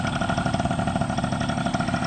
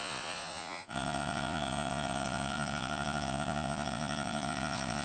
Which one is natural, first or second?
first